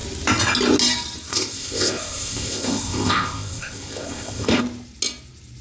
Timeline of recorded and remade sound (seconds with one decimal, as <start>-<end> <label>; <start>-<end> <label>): 0.0-1.3 recorded; 1.3-4.6 remade; 4.6-5.6 recorded